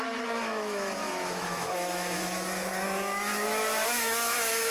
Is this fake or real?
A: fake